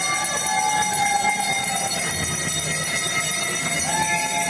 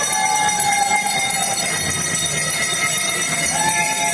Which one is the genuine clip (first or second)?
first